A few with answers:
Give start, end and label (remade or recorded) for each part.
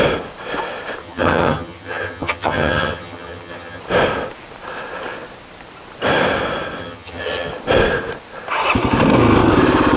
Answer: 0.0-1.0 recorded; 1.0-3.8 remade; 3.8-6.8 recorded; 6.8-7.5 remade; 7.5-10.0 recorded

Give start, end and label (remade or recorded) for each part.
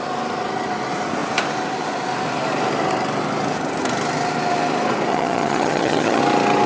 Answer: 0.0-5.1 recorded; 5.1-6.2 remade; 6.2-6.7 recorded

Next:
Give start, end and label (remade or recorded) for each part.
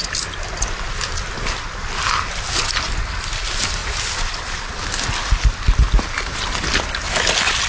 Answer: 0.0-7.7 recorded